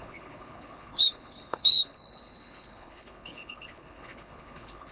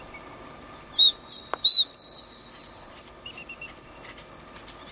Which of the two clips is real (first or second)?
second